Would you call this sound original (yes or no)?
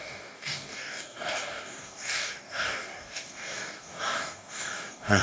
no